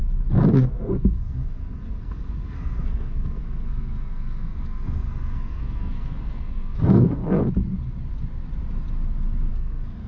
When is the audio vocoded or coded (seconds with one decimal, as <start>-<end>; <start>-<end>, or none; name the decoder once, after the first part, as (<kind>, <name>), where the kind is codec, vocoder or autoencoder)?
0.7-7.2 (codec, SNAC); 9.5-10.1